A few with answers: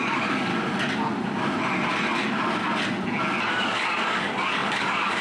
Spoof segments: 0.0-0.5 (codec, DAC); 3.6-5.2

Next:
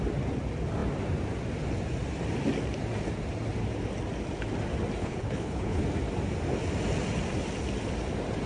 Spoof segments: 5.0-5.8 (codec, HILCodec)

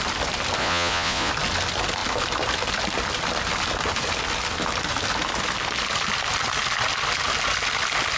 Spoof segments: 0.6-1.3 (vocoder, Vocos)